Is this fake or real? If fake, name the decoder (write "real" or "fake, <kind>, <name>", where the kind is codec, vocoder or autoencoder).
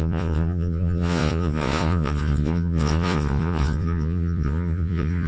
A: fake, vocoder, Vocos